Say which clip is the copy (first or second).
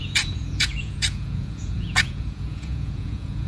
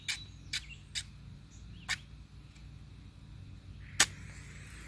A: first